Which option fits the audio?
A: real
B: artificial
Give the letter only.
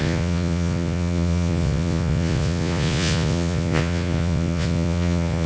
B